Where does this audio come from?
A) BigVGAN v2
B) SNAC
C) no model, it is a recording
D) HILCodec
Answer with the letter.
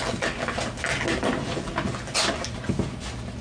C